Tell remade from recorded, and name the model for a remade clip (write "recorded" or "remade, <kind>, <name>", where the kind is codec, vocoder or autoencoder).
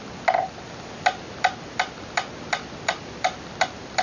recorded